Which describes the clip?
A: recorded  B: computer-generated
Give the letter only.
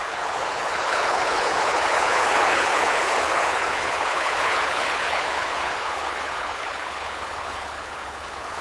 B